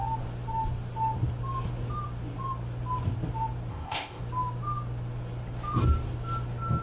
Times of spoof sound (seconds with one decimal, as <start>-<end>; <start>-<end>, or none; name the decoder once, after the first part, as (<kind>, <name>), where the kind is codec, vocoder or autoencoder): 3.7-4.2 (codec, ZipCodec)